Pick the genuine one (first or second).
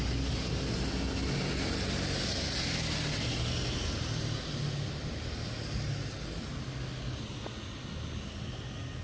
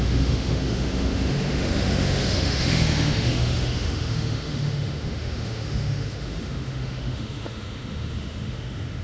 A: first